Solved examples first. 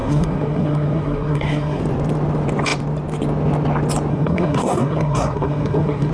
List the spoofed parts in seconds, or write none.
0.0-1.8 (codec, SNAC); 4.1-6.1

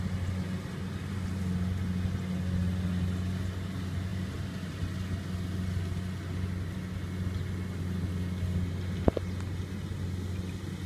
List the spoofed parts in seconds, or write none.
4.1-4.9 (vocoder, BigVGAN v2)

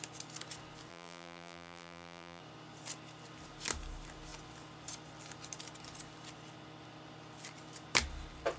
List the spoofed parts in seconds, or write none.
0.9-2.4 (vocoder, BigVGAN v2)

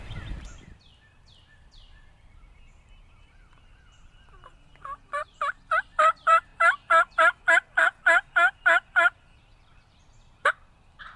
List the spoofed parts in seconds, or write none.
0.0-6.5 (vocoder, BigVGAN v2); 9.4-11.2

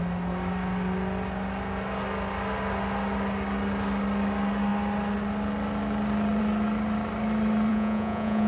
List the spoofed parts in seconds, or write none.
7.7-8.5 (vocoder, Vocos)

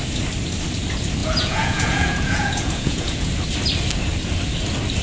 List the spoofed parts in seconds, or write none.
1.2-3.3 (vocoder, Vocos)

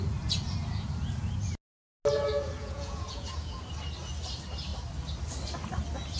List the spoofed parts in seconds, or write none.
2.6-3.6 (vocoder, Vocos)